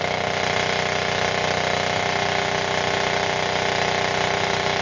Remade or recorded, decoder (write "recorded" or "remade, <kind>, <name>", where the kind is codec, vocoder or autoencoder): recorded